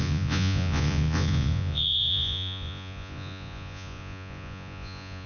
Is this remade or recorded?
remade